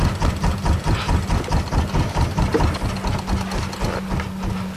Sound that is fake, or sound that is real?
real